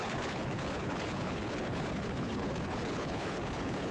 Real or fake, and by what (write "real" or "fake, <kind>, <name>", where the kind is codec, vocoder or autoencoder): fake, codec, HILCodec